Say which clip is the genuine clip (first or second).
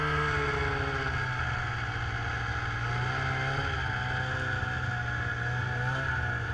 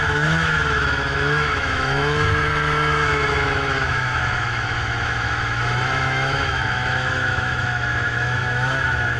first